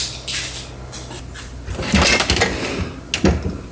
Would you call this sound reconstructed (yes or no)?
no